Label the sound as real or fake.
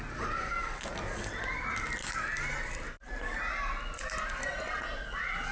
real